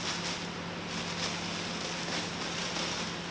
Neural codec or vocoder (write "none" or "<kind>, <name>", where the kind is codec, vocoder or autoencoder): none